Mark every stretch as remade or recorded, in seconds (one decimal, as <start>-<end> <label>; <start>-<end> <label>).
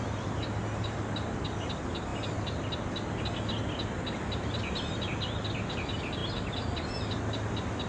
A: 0.0-7.9 recorded